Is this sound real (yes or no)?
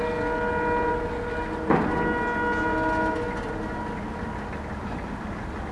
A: yes